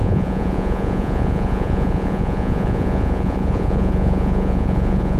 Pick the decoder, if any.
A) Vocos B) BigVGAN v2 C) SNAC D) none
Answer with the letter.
A